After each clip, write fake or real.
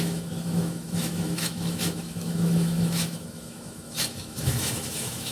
fake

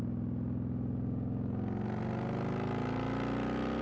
real